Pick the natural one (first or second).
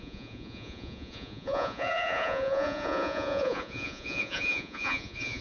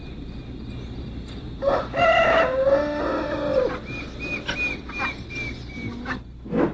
second